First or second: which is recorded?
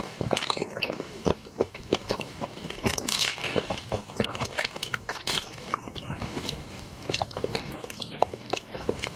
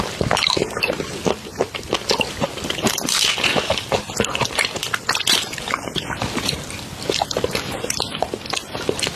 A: second